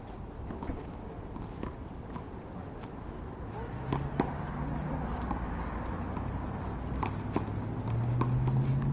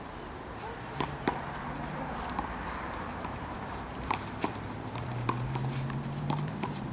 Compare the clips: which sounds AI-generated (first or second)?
second